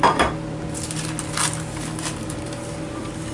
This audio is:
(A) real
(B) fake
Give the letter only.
A